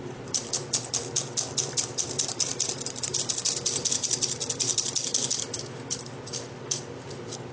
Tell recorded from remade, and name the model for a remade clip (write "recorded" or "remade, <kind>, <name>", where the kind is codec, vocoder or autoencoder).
recorded